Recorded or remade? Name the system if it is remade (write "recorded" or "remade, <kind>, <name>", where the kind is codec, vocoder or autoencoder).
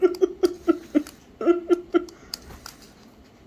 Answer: recorded